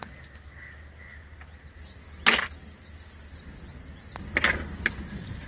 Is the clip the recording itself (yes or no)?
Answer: yes